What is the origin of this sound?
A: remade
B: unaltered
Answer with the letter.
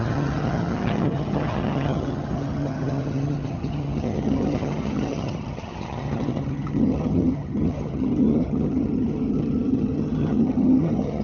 A